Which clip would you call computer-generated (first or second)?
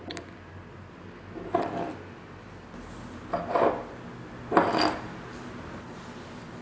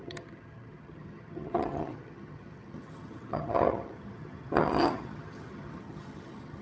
second